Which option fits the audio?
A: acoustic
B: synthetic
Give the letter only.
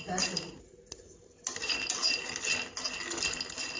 A